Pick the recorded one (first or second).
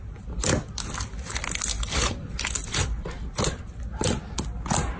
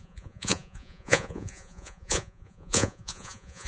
first